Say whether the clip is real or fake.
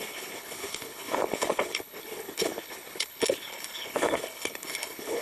fake